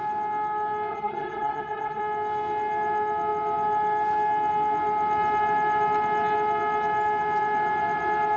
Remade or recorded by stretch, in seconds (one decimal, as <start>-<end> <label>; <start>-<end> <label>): 0.0-0.9 recorded; 0.9-2.0 remade; 2.0-8.4 recorded